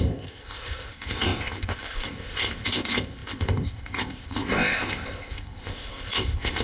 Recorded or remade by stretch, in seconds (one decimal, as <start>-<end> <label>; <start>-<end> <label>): 0.0-6.6 remade

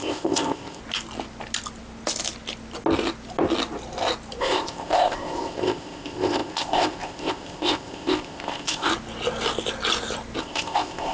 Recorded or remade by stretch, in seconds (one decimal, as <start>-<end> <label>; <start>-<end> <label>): 0.0-0.8 remade; 0.8-4.4 recorded; 4.4-8.9 remade; 8.9-10.4 recorded; 10.4-11.1 remade

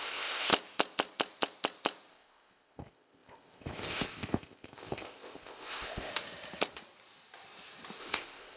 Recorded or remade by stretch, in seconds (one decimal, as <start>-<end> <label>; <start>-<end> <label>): 0.0-0.5 remade; 0.5-2.1 recorded; 2.1-6.1 remade; 6.1-8.0 recorded; 8.0-8.6 remade